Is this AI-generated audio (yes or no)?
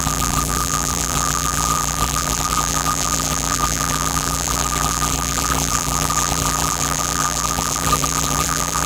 yes